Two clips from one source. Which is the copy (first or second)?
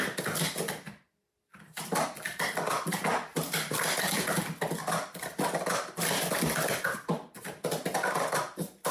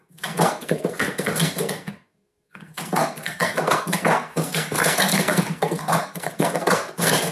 second